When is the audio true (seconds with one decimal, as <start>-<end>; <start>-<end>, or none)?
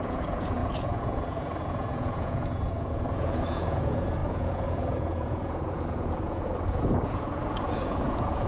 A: none